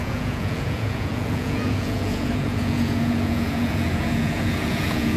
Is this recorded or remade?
remade